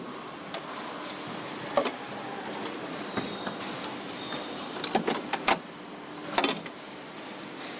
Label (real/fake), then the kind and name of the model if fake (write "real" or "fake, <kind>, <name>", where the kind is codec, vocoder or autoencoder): real